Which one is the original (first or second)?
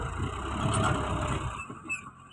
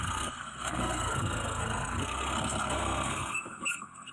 first